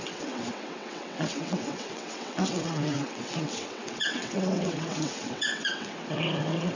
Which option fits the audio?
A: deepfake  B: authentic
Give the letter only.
A